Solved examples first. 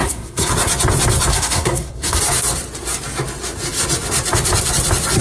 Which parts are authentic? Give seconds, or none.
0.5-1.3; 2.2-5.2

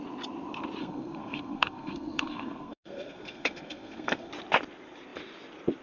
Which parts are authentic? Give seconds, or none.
0.0-0.8; 4.3-5.8